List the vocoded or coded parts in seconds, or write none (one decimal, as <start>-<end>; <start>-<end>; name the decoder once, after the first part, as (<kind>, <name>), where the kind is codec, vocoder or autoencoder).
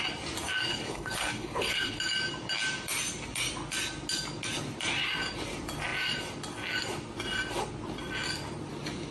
0.7-2.0 (codec, HILCodec)